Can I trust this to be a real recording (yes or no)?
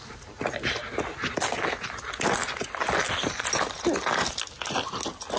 yes